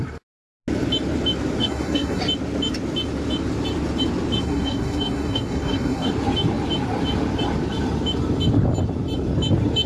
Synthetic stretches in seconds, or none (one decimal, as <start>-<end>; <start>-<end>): 1.6-2.2; 4.4-6.1